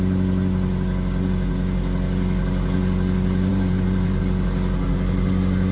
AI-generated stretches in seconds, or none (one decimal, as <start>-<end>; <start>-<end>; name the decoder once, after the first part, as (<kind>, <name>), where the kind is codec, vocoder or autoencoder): 3.5-4.2 (vocoder, BigVGAN v2)